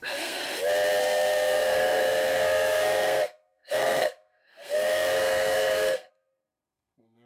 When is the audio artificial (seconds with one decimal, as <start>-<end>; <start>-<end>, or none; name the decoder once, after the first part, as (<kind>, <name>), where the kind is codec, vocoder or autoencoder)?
0.0-0.4 (codec, SNAC); 1.0-7.3